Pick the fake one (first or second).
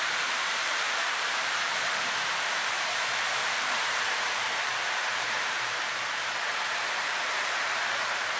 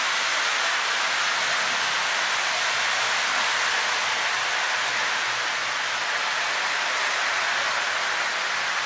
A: first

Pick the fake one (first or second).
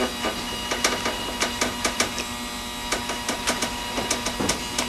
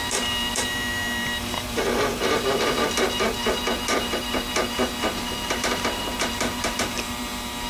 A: second